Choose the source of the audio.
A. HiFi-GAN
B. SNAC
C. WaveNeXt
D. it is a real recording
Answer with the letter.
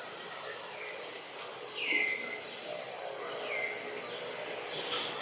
D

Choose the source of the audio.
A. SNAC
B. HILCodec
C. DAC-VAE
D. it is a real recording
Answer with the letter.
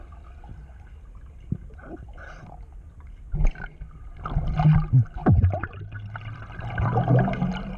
D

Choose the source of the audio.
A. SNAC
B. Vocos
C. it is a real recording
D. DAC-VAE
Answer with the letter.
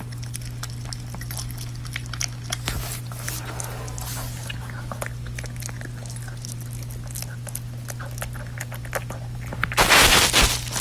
C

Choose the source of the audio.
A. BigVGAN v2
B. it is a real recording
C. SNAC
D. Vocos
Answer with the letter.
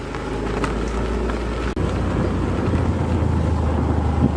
B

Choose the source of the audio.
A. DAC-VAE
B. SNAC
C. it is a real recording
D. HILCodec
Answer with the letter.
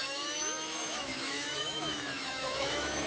A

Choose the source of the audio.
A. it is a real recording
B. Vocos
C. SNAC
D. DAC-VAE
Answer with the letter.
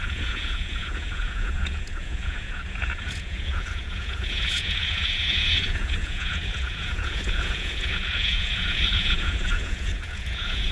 B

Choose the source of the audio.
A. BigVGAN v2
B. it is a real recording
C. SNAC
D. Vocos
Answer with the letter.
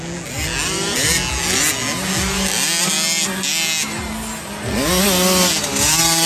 B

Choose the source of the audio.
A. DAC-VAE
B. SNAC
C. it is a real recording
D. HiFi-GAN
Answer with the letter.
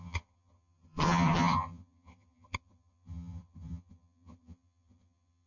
D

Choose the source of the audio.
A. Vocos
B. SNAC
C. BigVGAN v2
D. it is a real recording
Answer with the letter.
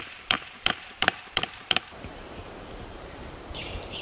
C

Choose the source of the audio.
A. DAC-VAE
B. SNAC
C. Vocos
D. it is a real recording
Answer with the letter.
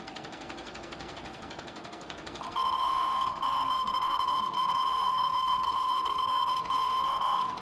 B